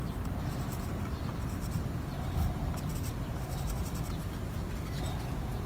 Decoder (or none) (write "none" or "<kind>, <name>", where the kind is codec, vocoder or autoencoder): vocoder, BigVGAN v2